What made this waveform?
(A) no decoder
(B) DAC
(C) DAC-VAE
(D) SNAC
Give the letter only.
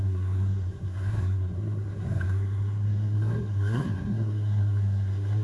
D